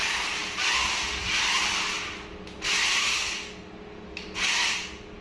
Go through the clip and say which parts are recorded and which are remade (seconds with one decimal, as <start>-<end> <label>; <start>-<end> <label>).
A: 0.0-5.2 recorded